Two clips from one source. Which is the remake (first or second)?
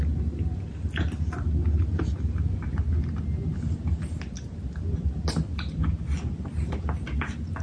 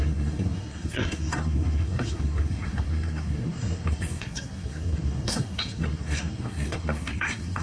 second